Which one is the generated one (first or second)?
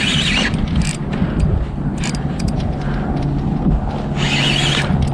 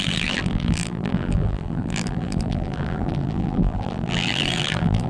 second